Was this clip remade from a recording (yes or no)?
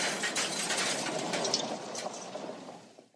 no